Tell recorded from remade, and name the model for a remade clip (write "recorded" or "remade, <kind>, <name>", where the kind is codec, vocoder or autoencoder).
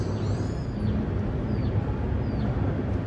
recorded